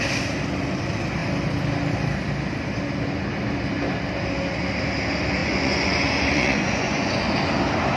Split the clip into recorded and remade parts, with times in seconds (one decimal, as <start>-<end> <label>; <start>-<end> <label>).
0.0-5.4 recorded; 5.4-7.2 remade; 7.2-8.0 recorded

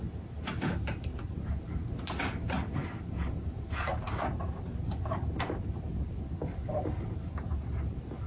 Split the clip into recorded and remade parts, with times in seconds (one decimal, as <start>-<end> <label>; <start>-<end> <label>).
0.0-8.3 recorded

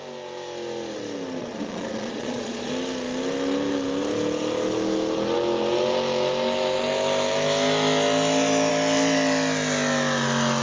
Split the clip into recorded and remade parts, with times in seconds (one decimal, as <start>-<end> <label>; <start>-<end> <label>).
0.0-1.4 recorded; 1.4-2.7 remade; 2.7-10.6 recorded

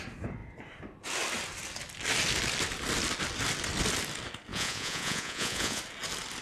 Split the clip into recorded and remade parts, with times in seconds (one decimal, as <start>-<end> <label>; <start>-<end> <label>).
0.0-4.5 recorded; 4.5-5.8 remade; 5.8-6.4 recorded

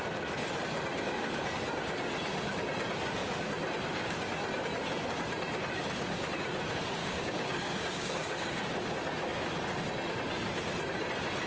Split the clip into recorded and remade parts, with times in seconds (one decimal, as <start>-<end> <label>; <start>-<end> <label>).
0.0-7.0 recorded; 7.0-8.6 remade; 8.6-11.5 recorded

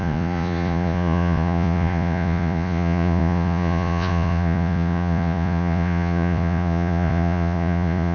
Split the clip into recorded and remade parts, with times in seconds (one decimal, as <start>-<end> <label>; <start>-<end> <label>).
0.0-8.1 remade

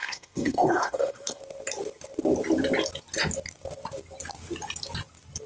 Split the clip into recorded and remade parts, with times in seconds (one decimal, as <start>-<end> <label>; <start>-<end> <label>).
0.0-1.4 remade; 1.4-5.5 recorded

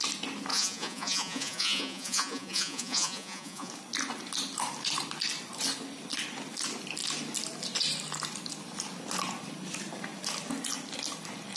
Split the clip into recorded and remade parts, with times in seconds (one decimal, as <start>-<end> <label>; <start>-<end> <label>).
0.0-0.5 recorded; 0.5-3.7 remade; 3.7-11.6 recorded